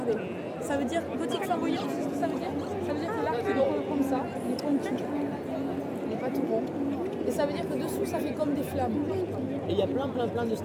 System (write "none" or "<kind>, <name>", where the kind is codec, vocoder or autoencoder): none